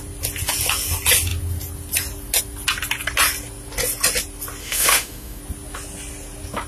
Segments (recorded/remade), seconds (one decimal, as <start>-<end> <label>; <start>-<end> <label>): 0.0-4.6 recorded; 4.6-5.4 remade; 5.4-6.7 recorded